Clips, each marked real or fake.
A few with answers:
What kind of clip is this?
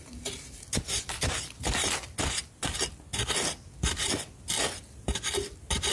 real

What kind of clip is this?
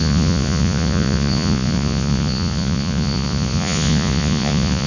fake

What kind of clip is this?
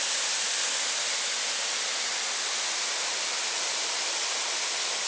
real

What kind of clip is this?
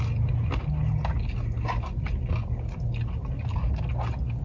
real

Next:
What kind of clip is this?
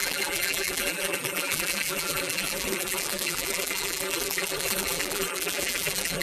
fake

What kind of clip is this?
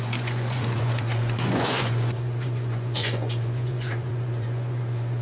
fake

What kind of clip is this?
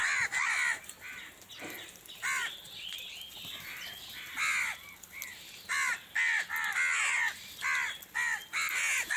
real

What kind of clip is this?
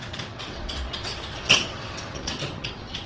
fake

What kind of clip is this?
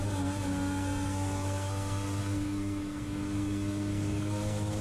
fake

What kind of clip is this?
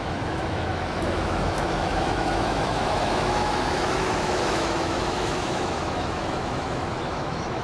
fake